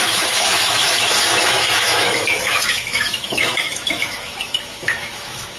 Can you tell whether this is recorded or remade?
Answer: remade